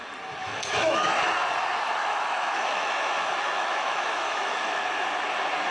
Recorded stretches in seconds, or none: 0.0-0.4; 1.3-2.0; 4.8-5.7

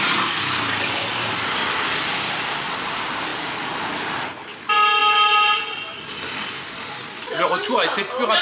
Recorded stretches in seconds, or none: 0.0-8.4

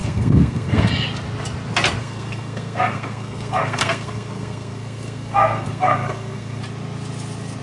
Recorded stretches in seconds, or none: 0.9-2.0; 6.6-7.6

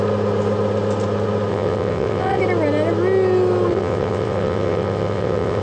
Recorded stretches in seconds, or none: 0.0-1.5; 2.4-3.7

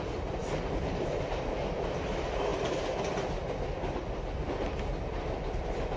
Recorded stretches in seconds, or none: 0.0-6.0

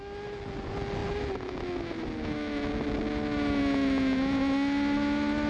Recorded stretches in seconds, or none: 0.0-5.5

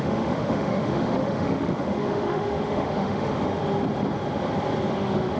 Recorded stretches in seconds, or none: 3.6-4.9